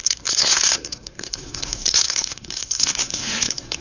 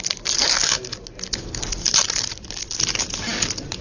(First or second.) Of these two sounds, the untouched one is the second